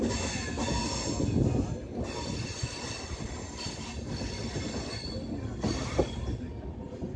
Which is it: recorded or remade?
recorded